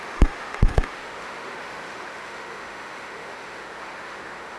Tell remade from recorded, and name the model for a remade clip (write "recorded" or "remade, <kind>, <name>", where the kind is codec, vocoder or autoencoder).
remade, autoencoder, DAC-VAE